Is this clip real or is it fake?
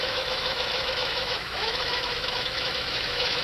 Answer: fake